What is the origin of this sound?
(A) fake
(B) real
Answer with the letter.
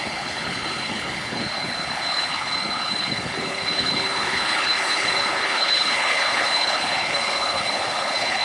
A